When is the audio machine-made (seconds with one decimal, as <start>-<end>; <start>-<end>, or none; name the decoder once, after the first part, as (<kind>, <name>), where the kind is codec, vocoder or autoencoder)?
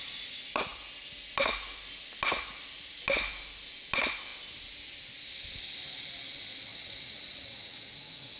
6.7-7.9 (vocoder, WaveNeXt)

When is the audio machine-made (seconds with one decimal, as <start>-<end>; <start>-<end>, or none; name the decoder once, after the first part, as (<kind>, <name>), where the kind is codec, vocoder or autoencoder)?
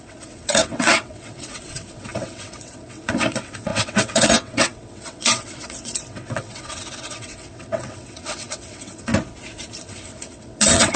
0.0-9.1 (vocoder, WaveNeXt); 9.8-11.0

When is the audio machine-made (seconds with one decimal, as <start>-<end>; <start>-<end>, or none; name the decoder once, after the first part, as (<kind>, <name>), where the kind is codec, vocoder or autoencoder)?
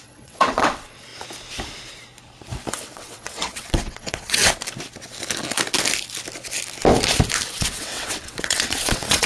0.0-1.1 (vocoder, WaveNeXt); 2.7-4.4; 7.5-9.3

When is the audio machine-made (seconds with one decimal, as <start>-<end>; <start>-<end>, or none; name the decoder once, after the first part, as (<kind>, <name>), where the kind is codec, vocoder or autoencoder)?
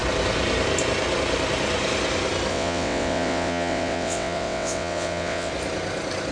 2.5-5.5 (vocoder, WaveNeXt)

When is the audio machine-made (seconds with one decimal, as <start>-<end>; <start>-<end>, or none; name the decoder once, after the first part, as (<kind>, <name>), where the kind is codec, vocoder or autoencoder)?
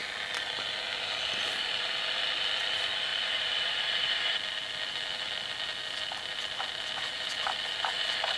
none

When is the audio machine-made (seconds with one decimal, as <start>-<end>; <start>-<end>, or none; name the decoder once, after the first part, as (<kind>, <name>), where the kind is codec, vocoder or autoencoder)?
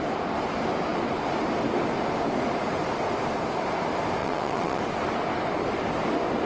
4.2-4.8 (vocoder, WaveNeXt)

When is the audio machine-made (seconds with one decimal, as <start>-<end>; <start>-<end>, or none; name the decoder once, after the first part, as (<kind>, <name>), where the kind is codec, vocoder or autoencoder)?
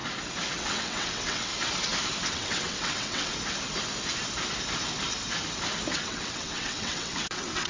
0.5-1.5 (vocoder, WaveNeXt); 2.3-3.3; 5.9-7.7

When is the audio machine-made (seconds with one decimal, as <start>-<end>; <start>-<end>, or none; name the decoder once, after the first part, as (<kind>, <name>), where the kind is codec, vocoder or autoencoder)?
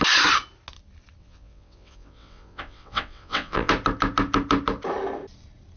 1.2-3.7 (vocoder, WaveNeXt)